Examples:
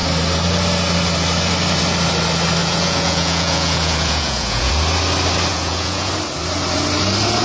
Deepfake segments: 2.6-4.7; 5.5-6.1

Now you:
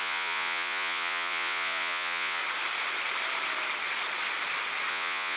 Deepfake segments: 0.0-2.4; 4.9-5.4

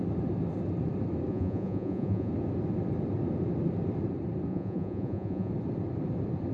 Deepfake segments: 1.3-2.3; 4.5-5.5

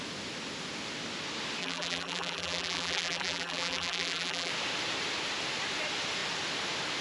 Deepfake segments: 1.6-4.5

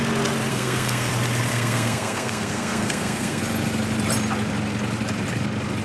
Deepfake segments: 0.5-1.1; 1.5-3.4

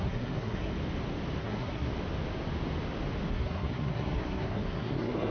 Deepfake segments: 0.0-0.7; 1.4-1.9; 3.3-5.3

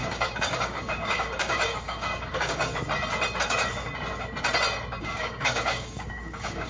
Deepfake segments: 0.0-2.7; 5.0-6.7